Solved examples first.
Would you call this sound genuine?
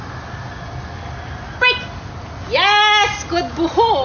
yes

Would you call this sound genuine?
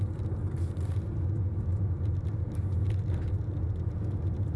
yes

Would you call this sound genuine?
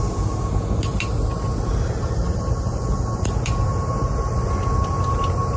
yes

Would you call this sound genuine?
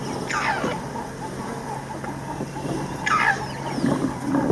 yes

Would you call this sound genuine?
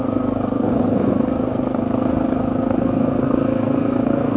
no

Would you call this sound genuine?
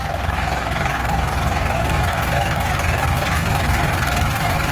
no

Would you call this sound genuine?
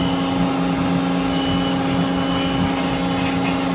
yes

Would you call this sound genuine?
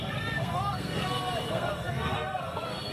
no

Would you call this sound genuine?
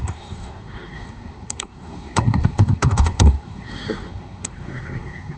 no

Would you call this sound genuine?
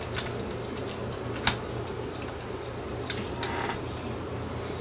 yes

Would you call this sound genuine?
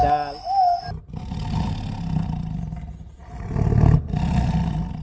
yes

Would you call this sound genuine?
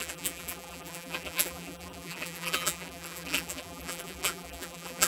no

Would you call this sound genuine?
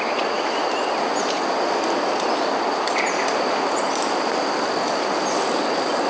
yes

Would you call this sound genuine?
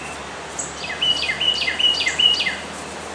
yes